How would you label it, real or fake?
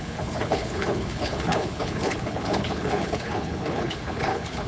fake